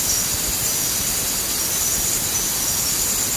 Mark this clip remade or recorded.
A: recorded